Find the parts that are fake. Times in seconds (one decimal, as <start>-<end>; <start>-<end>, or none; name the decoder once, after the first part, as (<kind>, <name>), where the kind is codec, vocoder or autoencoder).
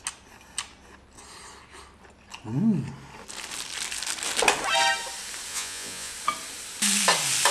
5.5-6.1 (vocoder, Vocos)